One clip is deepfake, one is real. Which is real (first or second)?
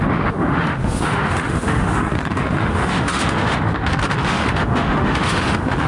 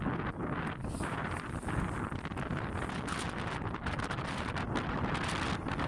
second